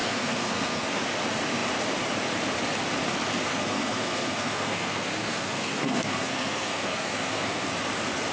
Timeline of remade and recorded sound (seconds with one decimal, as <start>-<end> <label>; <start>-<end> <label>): 0.0-1.0 remade; 1.0-3.5 recorded; 3.5-7.7 remade; 7.7-8.3 recorded